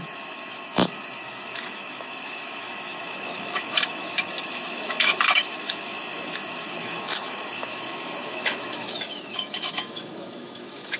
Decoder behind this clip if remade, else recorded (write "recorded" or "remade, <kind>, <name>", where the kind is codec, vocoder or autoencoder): remade, autoencoder, DAC-VAE